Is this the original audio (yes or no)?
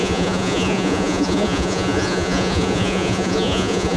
no